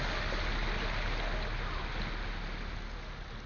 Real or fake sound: real